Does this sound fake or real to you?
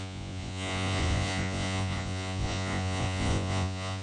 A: fake